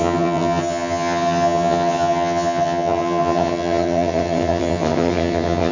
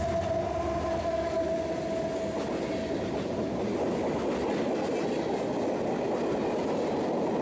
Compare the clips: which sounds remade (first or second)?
first